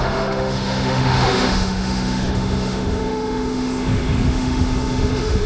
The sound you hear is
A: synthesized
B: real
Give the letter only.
A